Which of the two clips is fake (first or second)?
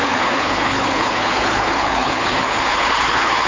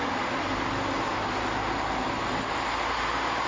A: first